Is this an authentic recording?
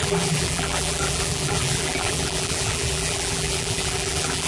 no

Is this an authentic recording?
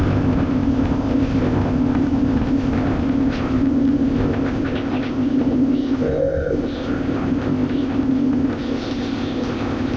no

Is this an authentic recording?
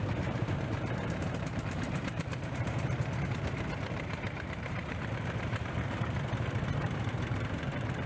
no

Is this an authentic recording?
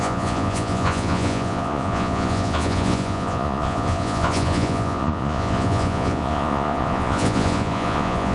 no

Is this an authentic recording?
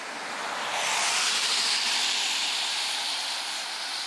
yes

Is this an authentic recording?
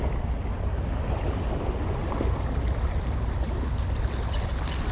yes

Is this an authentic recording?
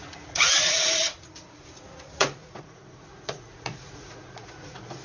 no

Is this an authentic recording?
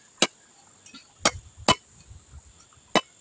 yes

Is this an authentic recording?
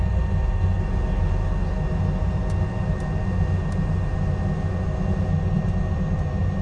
yes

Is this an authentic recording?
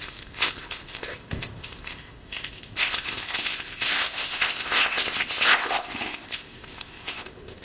no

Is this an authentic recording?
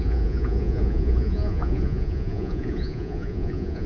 no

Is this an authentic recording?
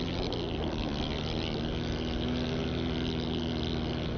yes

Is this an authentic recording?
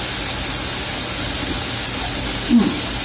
yes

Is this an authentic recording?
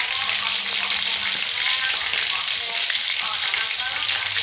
yes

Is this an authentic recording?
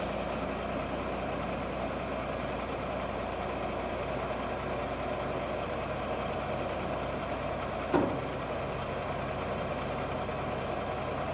yes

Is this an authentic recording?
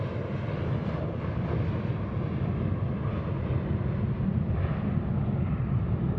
yes